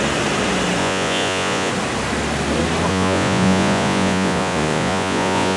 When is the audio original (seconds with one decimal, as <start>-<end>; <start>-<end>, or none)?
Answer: 0.0-0.8; 1.7-2.9